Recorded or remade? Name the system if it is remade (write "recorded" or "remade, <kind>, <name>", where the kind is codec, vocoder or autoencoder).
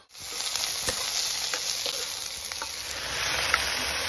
recorded